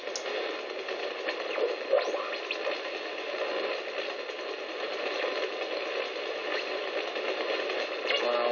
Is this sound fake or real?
real